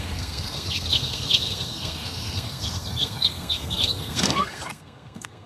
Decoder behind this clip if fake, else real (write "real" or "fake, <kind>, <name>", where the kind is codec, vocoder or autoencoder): fake, codec, SNAC